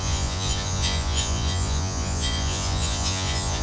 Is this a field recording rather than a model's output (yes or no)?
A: no